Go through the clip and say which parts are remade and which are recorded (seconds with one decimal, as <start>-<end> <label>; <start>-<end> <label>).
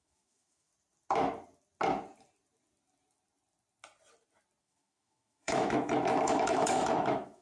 0.0-0.7 remade; 0.7-4.6 recorded; 4.6-7.4 remade